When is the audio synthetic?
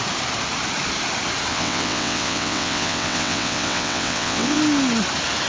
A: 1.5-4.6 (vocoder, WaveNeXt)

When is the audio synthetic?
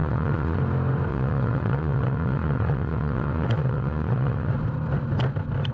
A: 0.0-0.6 (vocoder, WaveNeXt); 1.1-4.5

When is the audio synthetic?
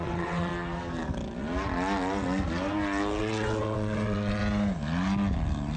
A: 0.0-0.5 (vocoder, WaveNeXt); 3.2-4.4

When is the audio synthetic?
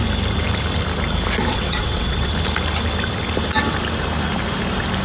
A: 1.5-2.3 (vocoder, WaveNeXt)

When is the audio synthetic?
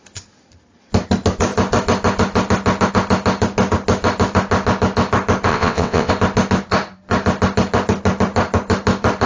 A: 5.5-6.1 (vocoder, WaveNeXt)